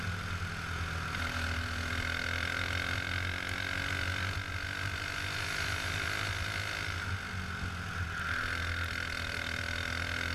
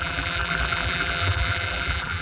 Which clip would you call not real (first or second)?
second